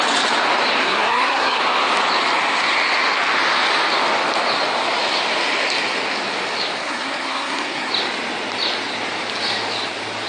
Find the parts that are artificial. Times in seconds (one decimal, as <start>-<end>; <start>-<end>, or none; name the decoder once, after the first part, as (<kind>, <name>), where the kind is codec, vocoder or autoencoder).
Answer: 0.8-1.6 (codec, SNAC); 6.8-7.9